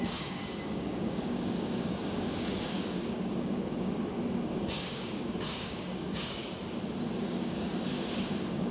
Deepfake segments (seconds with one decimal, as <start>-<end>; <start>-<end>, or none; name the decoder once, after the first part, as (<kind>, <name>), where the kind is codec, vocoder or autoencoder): 0.0-6.4 (codec, DAC); 7.2-8.7